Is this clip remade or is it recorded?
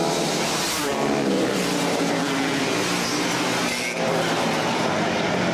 recorded